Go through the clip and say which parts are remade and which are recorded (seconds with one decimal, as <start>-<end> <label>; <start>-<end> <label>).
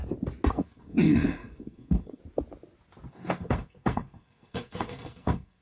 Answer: 0.0-0.5 recorded; 0.5-2.2 remade; 2.2-3.1 recorded; 3.1-5.6 remade